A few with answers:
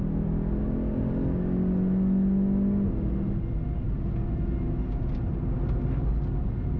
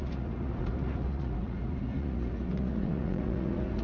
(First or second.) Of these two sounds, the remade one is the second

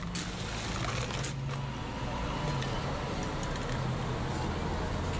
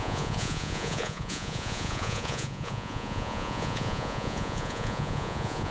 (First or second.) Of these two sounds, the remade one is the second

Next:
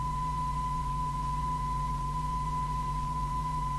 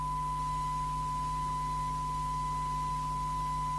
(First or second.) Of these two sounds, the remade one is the first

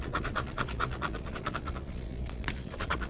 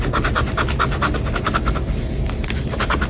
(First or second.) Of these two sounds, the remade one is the first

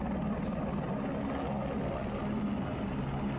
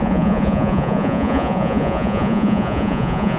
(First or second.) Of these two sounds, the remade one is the second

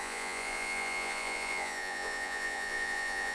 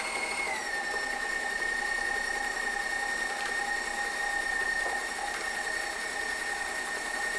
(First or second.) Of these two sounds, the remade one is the first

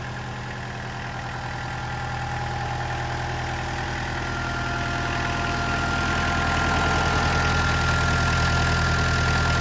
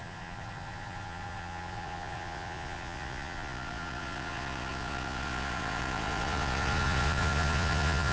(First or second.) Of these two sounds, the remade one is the second